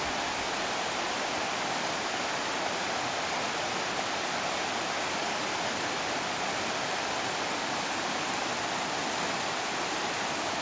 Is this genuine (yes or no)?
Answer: yes